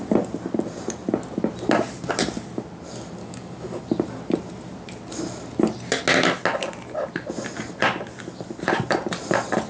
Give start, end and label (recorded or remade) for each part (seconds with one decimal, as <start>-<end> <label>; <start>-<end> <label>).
0.0-3.2 recorded; 3.2-3.8 remade; 3.8-9.7 recorded